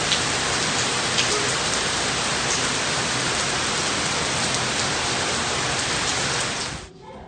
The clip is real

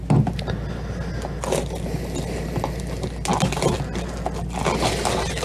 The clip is real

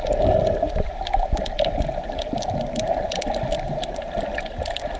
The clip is real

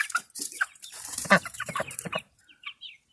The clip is fake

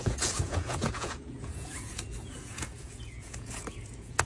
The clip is fake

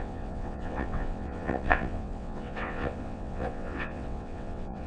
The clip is fake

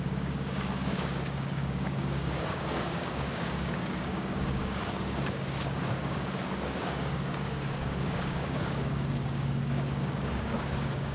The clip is fake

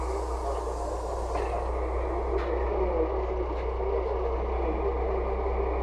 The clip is real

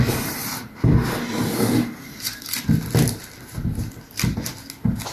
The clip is real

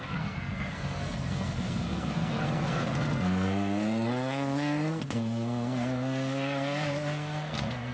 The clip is fake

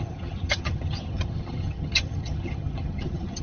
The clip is fake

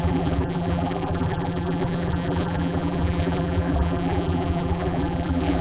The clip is fake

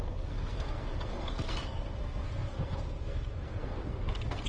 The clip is fake